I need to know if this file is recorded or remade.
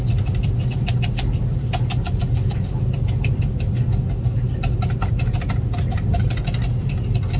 recorded